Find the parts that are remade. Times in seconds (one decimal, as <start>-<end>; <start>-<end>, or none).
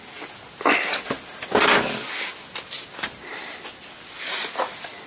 3.3-4.4